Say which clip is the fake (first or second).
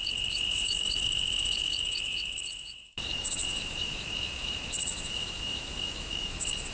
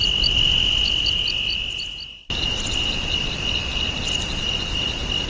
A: first